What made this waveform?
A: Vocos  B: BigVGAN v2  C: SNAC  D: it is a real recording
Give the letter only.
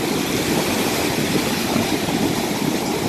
D